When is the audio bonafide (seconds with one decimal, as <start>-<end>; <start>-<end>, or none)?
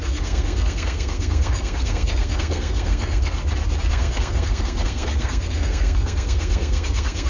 3.4-3.9